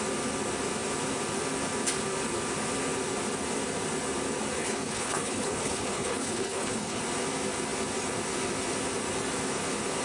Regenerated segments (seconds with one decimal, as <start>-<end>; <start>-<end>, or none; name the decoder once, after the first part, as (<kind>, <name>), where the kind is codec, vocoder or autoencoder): 4.6-7.0 (codec, HILCodec)